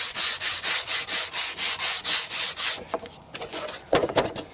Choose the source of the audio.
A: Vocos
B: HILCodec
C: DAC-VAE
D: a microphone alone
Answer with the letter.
A